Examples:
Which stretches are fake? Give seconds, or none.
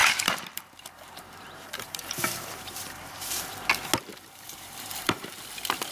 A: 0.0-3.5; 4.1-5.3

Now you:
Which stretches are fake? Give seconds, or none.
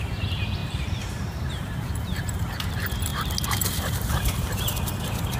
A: 0.6-2.7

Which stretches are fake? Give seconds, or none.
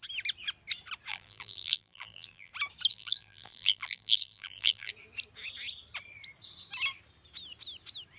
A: 1.1-2.5; 2.9-4.9